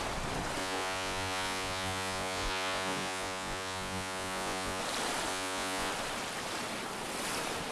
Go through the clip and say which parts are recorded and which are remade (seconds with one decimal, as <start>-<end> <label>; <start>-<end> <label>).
0.0-0.6 recorded; 0.6-4.8 remade; 4.8-5.3 recorded; 5.3-5.9 remade; 5.9-7.7 recorded